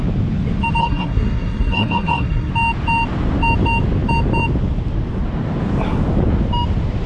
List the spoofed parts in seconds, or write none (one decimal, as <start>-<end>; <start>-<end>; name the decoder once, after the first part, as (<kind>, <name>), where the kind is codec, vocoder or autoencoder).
0.8-2.5 (codec, SNAC)

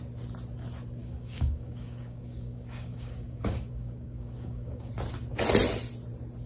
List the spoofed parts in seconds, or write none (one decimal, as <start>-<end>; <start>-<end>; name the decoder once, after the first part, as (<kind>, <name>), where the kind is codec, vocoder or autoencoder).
1.0-4.9 (codec, DAC)

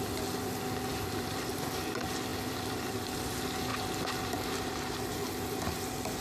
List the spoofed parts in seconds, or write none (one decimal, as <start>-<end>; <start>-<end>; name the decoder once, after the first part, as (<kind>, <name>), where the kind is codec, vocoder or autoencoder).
0.9-1.5 (vocoder, BigVGAN v2); 2.3-3.2

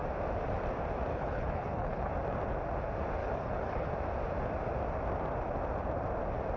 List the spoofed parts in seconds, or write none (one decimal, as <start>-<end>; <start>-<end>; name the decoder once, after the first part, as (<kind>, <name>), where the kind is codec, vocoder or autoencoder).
1.1-2.1 (codec, HILCodec); 3.2-3.9

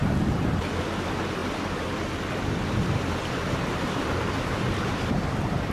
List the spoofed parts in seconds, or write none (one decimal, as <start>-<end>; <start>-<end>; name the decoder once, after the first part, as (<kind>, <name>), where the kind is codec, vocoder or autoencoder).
0.0-5.7 (vocoder, BigVGAN v2)